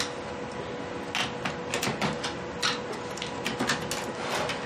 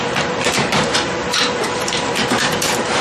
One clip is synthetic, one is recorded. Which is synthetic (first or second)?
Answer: second